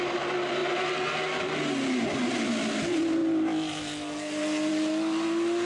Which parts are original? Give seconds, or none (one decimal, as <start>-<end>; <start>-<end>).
0.0-5.7

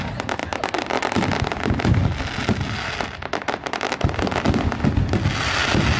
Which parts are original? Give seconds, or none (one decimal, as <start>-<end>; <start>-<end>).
0.0-6.0

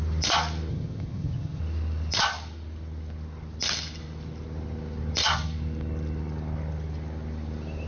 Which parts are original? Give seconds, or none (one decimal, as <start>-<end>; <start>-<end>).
0.0-0.7; 1.6-7.9